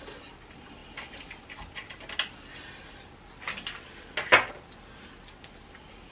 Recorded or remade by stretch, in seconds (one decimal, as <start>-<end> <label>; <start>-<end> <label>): 0.0-6.1 recorded